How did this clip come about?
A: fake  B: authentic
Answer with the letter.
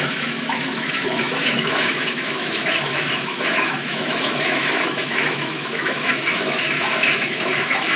A